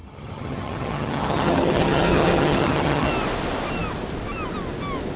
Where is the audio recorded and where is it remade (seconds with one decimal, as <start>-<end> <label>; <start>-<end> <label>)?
0.0-3.1 remade; 3.1-5.2 recorded